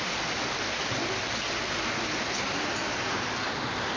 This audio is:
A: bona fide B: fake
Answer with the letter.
A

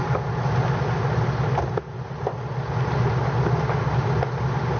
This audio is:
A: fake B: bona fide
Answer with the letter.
B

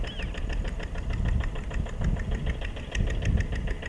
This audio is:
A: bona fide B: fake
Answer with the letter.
A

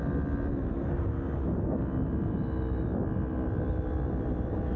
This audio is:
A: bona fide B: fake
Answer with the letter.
A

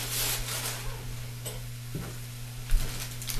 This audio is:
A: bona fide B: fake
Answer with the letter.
A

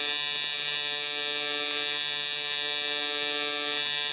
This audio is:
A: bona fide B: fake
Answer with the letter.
A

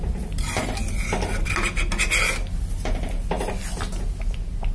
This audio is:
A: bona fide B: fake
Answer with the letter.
A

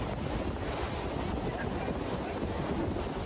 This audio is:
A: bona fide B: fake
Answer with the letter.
A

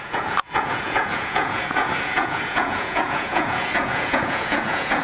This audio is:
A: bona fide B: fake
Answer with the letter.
B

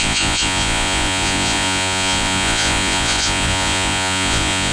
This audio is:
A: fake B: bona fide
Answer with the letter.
A